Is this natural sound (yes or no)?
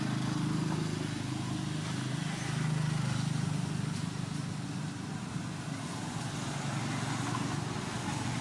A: yes